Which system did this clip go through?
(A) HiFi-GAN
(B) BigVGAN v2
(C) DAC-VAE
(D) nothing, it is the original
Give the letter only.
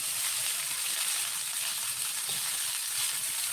D